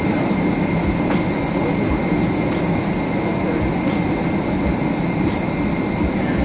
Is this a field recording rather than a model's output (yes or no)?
yes